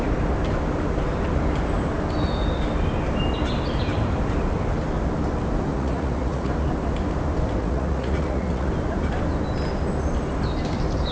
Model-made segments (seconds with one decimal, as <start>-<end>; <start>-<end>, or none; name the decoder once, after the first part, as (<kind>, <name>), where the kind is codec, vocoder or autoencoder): 5.7-6.5 (vocoder, Vocos); 7.6-8.7